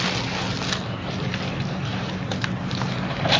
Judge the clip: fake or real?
real